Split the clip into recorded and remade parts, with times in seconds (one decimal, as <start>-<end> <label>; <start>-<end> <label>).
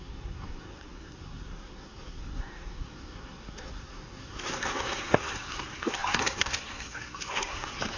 0.0-8.0 remade